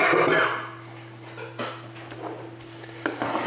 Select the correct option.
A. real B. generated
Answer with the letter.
A